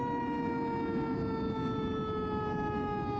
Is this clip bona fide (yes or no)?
yes